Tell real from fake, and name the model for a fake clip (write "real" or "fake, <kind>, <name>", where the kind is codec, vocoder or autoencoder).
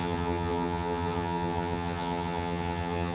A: fake, vocoder, HiFi-GAN